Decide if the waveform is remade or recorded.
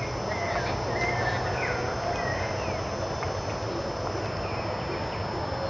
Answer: recorded